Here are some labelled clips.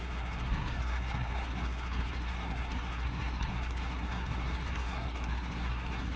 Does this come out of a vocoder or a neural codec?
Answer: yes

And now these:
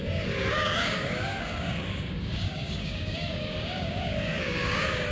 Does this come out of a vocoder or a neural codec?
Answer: yes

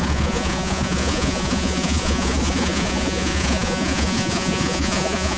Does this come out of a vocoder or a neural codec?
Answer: yes